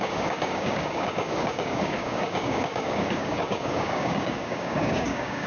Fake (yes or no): yes